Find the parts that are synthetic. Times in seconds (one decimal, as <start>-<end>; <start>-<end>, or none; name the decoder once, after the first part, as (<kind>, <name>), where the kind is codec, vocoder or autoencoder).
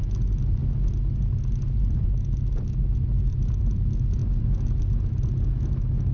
none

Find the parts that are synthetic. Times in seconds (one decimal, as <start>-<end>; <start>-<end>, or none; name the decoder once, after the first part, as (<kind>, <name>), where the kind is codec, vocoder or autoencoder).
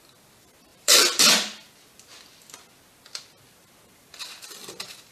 0.7-1.3 (vocoder, BigVGAN v2)